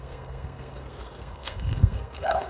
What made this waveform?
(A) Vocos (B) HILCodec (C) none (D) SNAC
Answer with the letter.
D